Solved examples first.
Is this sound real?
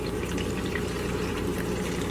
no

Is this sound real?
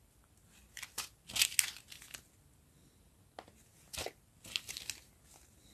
yes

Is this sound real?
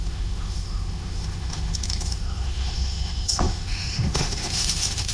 no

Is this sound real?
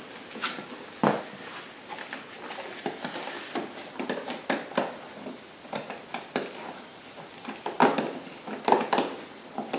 yes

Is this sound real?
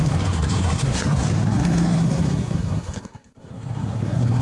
no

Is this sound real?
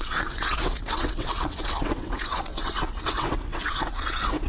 no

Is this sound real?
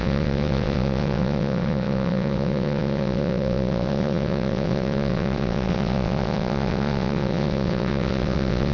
no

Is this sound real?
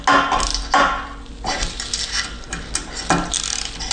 yes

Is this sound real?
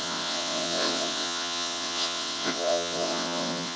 no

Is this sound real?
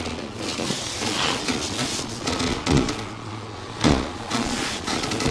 no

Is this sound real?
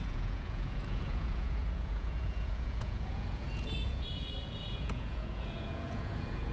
no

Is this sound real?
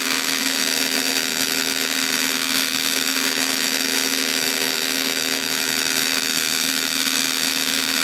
no